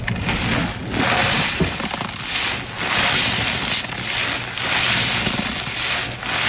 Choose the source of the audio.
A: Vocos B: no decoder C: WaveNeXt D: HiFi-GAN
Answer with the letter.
B